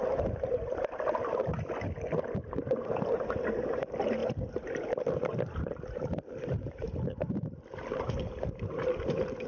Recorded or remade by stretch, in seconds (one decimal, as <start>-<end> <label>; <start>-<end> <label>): 0.0-9.5 recorded